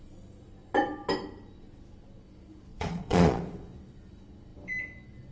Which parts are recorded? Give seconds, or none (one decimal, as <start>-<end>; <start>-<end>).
0.0-2.7; 3.4-5.3